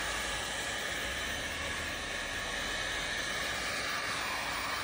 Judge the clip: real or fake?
real